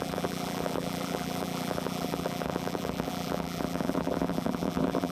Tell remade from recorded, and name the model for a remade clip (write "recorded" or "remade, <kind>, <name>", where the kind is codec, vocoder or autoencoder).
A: remade, vocoder, BigVGAN v2